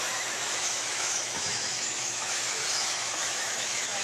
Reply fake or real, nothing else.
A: fake